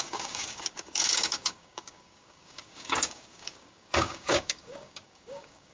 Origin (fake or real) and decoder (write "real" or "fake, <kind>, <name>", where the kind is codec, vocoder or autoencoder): fake, codec, DAC